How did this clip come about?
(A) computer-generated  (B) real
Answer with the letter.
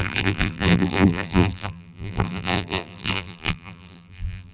A